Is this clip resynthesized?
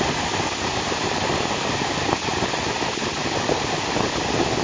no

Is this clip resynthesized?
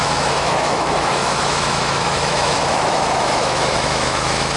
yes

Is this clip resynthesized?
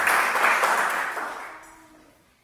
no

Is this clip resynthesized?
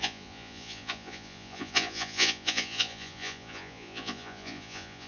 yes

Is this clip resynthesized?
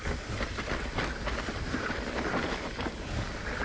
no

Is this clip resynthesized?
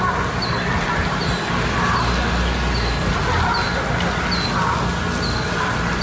no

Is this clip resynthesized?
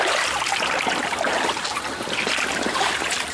no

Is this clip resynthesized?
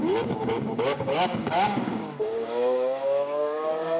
yes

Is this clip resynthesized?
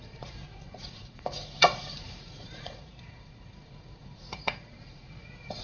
yes